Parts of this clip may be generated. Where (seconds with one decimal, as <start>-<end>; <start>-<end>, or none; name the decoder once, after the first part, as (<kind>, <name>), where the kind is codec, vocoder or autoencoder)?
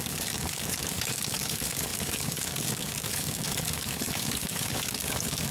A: 0.0-5.5 (codec, DAC)